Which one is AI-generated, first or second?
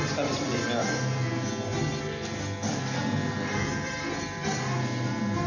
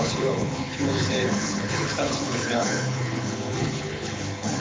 second